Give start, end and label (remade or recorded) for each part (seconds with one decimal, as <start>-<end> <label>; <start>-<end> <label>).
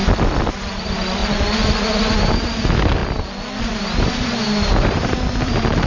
0.0-0.5 recorded; 0.5-1.2 remade; 1.2-1.9 recorded; 1.9-3.0 remade; 3.0-3.6 recorded; 3.6-5.9 remade